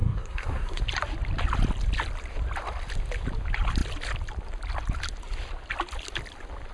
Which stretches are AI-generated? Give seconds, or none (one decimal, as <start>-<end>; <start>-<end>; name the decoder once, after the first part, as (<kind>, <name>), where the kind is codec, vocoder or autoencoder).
0.0-0.8 (codec, SNAC)